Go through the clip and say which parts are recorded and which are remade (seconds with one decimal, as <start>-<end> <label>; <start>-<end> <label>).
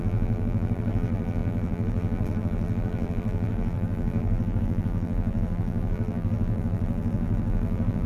0.0-8.1 remade